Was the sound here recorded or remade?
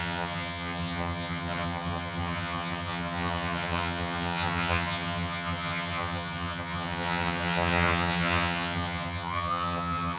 remade